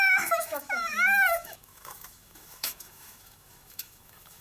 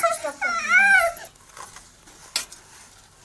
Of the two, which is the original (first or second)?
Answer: second